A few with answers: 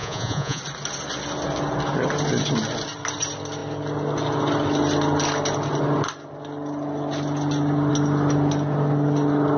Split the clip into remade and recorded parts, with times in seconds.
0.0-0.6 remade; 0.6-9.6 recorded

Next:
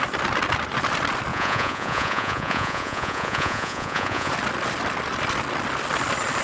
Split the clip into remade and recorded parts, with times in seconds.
0.0-1.3 recorded; 1.3-4.3 remade; 4.3-6.4 recorded